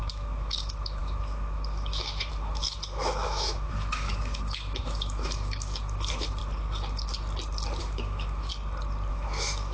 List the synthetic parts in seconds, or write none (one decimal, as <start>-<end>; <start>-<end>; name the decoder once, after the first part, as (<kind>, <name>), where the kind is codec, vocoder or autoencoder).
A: 0.0-6.4 (autoencoder, DAC-VAE); 7.8-8.5; 9.1-9.7

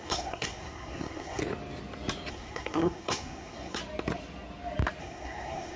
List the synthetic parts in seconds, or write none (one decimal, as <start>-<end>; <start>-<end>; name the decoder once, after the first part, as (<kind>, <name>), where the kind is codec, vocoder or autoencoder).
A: 0.0-1.4 (codec, SNAC); 2.3-3.8; 5.0-5.8

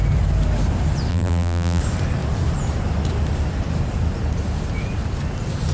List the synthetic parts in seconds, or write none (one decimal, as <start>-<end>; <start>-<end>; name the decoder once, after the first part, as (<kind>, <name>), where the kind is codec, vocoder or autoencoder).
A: 1.1-1.8 (vocoder, BigVGAN v2)

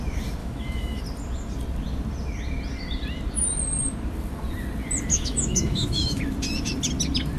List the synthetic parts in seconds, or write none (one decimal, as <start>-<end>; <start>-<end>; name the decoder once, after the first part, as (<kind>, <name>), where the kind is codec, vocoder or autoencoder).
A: 0.4-1.0 (autoencoder, DAC-VAE); 5.1-6.2

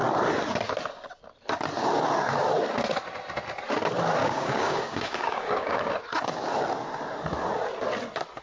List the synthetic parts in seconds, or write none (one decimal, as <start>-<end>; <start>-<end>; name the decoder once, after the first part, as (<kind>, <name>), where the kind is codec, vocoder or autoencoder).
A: 4.2-6.0 (codec, DAC)

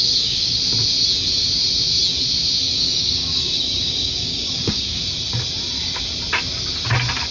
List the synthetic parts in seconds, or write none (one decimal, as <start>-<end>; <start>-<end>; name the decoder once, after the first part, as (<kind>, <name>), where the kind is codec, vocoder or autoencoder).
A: 0.0-0.6 (codec, DAC); 2.6-5.0

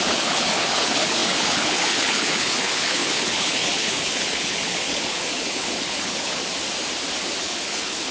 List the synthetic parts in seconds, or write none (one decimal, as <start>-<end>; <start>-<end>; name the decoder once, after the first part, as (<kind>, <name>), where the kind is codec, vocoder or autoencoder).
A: 0.0-6.4 (codec, HILCodec); 7.4-8.1

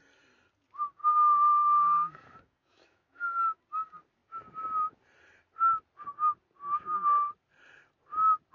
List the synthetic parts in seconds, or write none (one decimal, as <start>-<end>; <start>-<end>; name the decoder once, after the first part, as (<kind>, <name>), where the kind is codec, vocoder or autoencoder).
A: 1.0-3.6 (autoencoder, DAC-VAE)